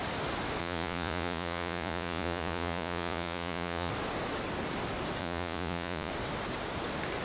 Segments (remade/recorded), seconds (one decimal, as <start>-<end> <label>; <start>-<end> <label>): 0.0-0.6 recorded; 0.6-3.9 remade; 3.9-5.2 recorded; 5.2-6.1 remade; 6.1-7.2 recorded